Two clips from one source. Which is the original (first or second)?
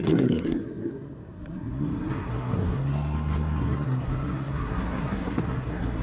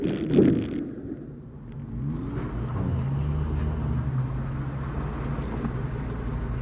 second